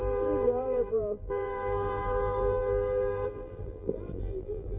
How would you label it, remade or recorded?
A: remade